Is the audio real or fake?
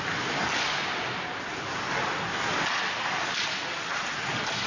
real